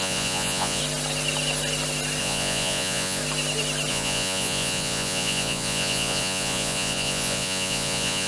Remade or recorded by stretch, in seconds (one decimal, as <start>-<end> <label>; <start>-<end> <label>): 0.0-0.8 remade; 0.8-2.2 recorded; 2.2-3.2 remade; 3.2-3.9 recorded; 3.9-8.3 remade

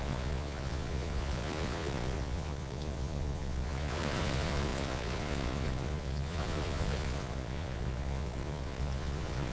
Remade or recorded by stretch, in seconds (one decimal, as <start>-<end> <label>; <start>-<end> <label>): 0.0-9.5 remade

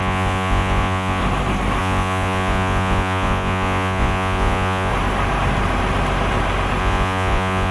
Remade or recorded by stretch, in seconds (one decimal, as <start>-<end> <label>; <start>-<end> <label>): 0.0-1.2 remade; 1.2-1.8 recorded; 1.8-4.9 remade; 4.9-6.8 recorded; 6.8-7.7 remade

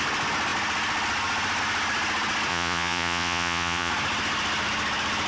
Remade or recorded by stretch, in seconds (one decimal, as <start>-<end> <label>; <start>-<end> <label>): 0.0-2.5 recorded; 2.5-3.9 remade; 3.9-5.3 recorded